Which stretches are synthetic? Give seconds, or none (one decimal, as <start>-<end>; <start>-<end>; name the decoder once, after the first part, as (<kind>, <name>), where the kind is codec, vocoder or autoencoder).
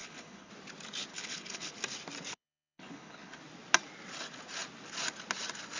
0.0-0.5 (codec, HILCodec); 1.1-1.7; 2.3-3.4